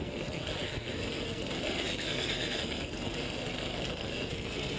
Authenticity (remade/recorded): remade